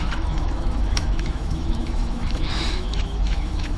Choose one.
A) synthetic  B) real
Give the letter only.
A